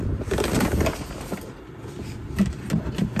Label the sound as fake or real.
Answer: real